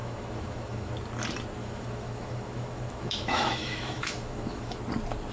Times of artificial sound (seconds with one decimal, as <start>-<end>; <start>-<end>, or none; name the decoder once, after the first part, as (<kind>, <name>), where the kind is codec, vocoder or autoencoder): 0.0-0.9 (autoencoder, DAC-VAE); 1.6-4.8